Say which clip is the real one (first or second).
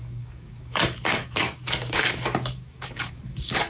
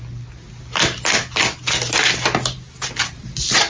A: second